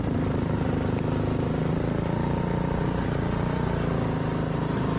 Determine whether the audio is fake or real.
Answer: real